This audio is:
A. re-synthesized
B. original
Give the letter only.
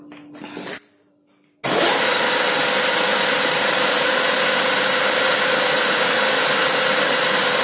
B